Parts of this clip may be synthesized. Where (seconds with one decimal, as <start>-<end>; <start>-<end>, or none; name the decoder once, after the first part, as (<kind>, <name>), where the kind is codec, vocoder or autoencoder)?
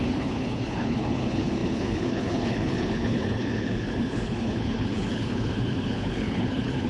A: 0.0-6.9 (codec, HILCodec)